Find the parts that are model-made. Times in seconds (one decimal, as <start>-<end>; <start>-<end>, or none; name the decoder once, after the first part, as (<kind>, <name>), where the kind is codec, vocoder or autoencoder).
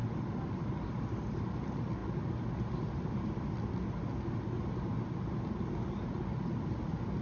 none